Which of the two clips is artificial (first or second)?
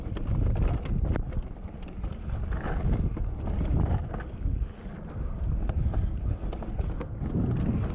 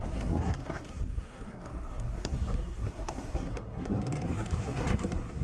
second